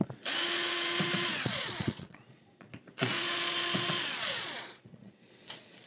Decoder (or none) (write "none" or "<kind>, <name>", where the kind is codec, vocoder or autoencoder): vocoder, Vocos